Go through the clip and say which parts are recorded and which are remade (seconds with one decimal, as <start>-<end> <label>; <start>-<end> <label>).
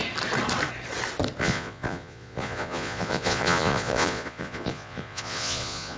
0.0-1.4 recorded; 1.4-6.0 remade